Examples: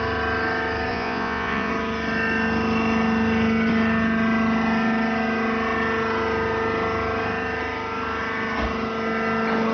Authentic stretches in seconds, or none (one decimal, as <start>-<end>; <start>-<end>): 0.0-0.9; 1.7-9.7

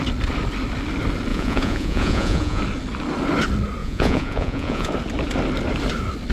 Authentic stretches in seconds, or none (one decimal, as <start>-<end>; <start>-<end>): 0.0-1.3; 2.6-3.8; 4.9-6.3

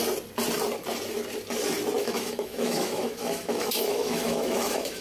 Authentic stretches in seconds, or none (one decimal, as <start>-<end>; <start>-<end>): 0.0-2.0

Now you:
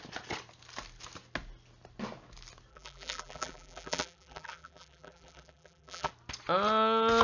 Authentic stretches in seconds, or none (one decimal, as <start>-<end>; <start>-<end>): 0.0-2.7; 6.1-7.2

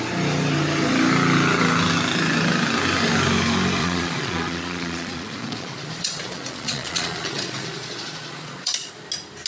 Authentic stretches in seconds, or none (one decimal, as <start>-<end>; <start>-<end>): 0.0-3.8; 8.9-9.5

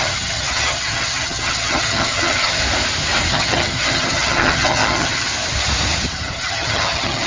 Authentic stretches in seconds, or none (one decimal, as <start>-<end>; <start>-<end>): 2.6-3.3; 5.3-6.3